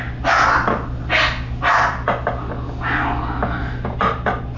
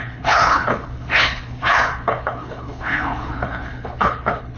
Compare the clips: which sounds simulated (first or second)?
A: second